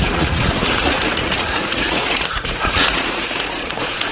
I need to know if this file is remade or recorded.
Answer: remade